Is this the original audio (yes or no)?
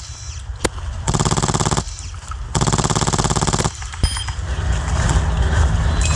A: yes